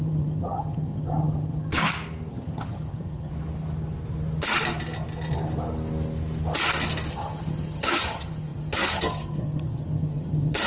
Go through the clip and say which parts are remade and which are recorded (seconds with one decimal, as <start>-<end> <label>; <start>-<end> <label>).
0.0-1.8 remade; 1.8-2.3 recorded; 2.3-3.3 remade; 3.3-7.1 recorded; 7.1-10.7 remade